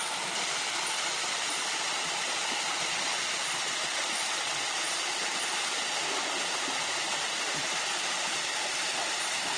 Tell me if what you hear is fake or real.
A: real